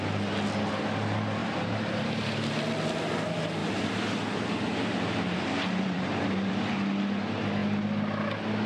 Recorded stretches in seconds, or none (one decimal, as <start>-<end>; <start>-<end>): 0.0-1.4; 2.5-3.6; 6.5-8.7